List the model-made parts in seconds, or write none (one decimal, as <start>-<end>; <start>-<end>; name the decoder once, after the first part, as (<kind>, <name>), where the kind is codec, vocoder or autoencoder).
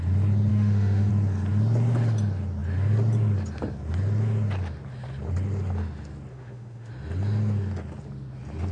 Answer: 0.5-1.1 (autoencoder, DAC-VAE); 6.3-6.9